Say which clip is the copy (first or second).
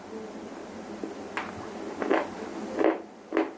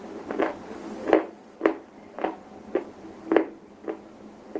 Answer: second